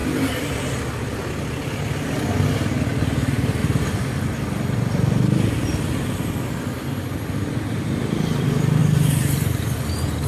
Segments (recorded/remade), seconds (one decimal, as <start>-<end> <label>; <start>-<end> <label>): 0.0-8.8 recorded; 8.8-9.6 remade; 9.6-10.3 recorded